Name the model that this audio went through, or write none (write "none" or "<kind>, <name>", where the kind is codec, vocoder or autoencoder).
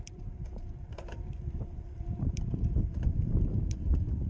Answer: vocoder, BigVGAN v2